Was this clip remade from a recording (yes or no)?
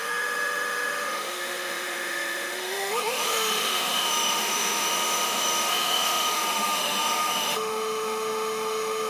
yes